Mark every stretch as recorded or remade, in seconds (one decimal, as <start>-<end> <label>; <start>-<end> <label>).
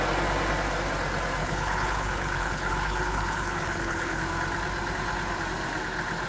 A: 0.0-1.4 recorded; 1.4-4.2 remade; 4.2-6.3 recorded